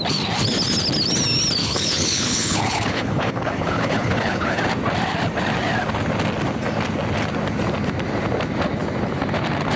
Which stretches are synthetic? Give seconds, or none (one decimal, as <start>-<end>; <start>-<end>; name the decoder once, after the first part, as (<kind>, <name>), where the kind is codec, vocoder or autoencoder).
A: 1.6-4.6 (codec, HILCodec)